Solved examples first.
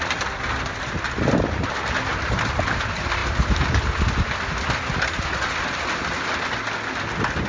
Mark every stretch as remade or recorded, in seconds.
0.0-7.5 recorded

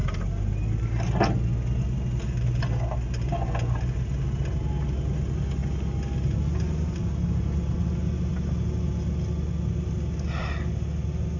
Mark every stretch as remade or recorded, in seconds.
0.0-11.4 recorded